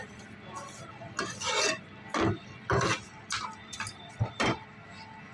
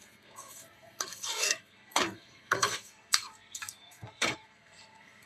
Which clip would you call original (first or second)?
first